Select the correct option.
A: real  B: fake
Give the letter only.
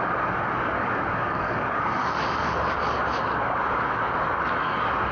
B